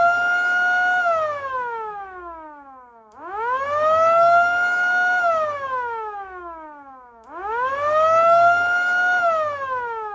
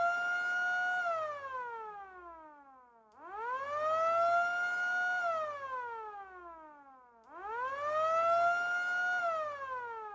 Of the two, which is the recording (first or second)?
second